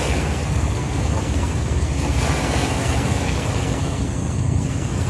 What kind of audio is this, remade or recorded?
remade